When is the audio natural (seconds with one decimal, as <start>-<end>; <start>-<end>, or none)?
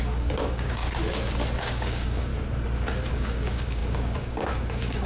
0.8-1.6; 2.3-3.1